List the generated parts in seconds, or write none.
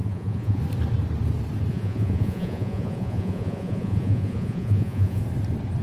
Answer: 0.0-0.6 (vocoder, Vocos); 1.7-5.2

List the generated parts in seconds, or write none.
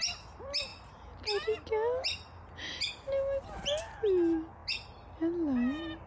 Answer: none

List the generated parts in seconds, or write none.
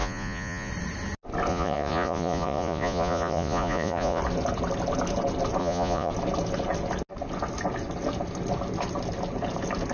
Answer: 0.0-0.7 (vocoder, Vocos); 1.5-4.2; 5.6-6.1